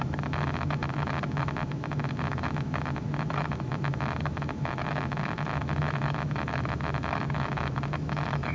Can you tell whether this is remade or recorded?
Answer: remade